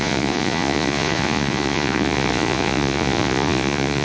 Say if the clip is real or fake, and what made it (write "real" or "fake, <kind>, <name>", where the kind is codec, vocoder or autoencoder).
fake, vocoder, Vocos